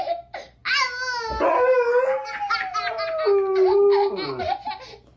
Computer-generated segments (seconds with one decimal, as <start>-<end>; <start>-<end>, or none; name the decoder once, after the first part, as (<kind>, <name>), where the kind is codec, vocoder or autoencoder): none